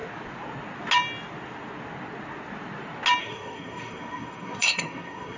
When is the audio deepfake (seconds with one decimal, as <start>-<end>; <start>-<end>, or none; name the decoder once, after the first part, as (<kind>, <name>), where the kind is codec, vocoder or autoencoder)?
3.2-5.4 (codec, SNAC)